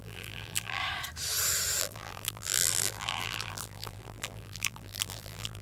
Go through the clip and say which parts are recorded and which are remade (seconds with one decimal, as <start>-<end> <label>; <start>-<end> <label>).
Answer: 0.0-0.8 remade; 0.8-1.8 recorded; 1.8-5.6 remade